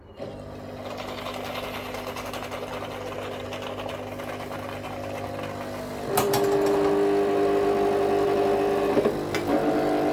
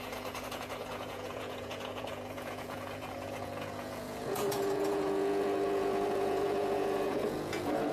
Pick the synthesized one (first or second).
second